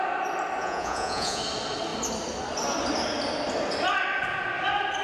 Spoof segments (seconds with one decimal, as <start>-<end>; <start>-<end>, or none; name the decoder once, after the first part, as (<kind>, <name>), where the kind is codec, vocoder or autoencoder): 0.6-1.4 (vocoder, Vocos)